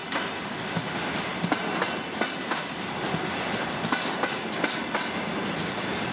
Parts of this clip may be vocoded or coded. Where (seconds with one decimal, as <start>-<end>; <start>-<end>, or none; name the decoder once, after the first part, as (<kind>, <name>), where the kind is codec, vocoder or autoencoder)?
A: none